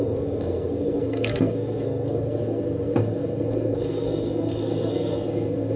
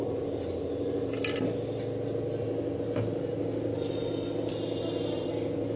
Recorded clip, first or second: second